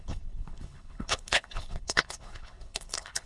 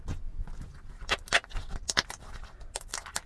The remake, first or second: first